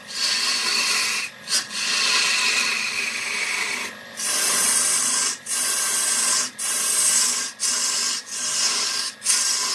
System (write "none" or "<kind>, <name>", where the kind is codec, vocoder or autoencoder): vocoder, BigVGAN v2